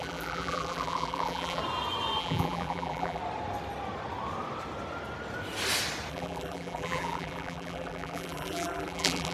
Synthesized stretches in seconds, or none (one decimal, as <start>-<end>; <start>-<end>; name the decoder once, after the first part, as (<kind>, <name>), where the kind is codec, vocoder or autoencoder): 0.0-1.6 (vocoder, BigVGAN v2); 2.2-3.2; 6.1-9.3